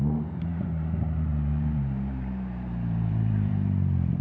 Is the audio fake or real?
fake